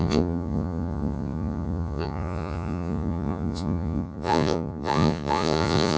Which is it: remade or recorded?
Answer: remade